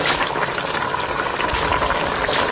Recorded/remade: recorded